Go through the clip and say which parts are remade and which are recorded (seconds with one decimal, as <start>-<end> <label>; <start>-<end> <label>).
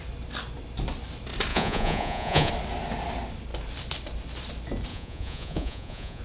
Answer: 0.0-1.5 recorded; 1.5-2.5 remade; 2.5-4.9 recorded; 4.9-6.2 remade